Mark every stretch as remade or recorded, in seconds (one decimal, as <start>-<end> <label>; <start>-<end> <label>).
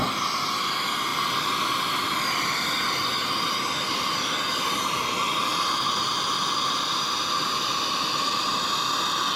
0.0-9.4 recorded